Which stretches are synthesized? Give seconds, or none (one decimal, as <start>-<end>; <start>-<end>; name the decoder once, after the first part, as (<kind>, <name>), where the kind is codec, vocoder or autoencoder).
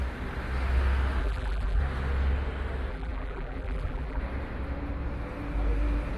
1.2-1.8 (vocoder, BigVGAN v2); 2.9-4.2